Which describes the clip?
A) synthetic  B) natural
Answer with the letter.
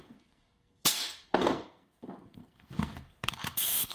A